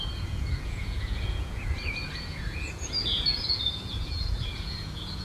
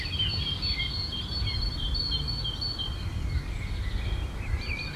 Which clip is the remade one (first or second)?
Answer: first